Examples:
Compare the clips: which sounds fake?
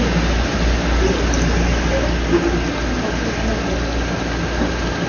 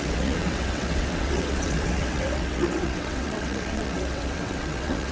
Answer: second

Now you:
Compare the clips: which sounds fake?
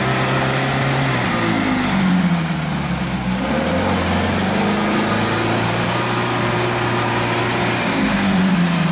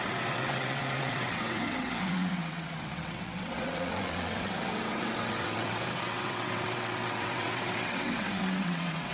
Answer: second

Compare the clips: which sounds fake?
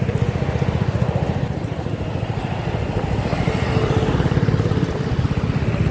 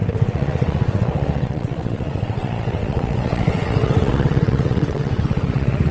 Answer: second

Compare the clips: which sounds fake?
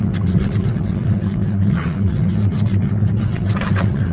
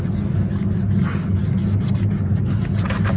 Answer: first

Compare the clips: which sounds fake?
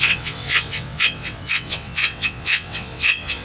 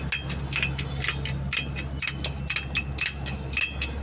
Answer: first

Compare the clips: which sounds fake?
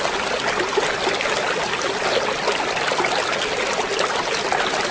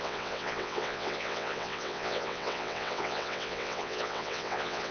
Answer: second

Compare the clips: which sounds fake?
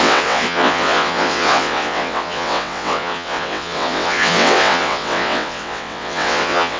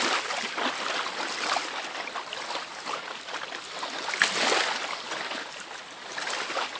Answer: first